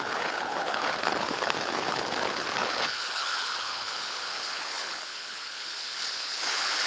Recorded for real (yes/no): no